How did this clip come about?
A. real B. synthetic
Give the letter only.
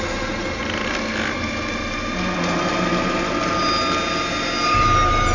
A